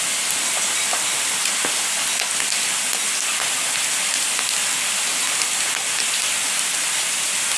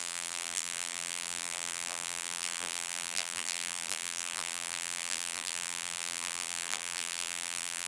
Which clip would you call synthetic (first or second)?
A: second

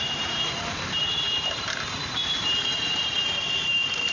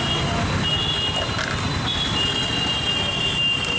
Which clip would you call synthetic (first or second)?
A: first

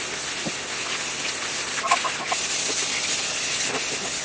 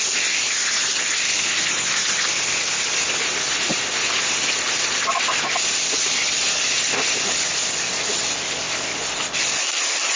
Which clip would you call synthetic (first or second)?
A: second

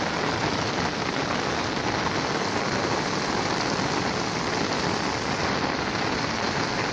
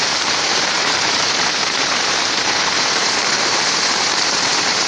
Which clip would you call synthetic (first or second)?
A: second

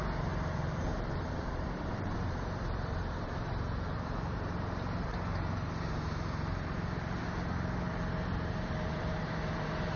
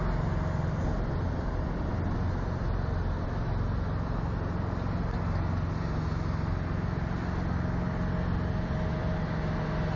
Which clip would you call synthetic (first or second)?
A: first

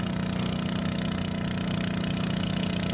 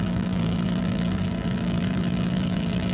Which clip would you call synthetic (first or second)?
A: second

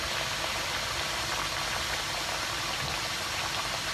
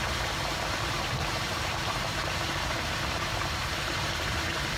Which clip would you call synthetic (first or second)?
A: second